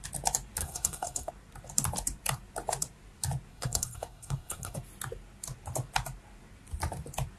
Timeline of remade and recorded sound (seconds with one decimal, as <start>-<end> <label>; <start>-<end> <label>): 0.0-0.6 recorded; 0.6-1.3 remade; 1.3-3.5 recorded; 3.5-4.8 remade; 4.8-7.4 recorded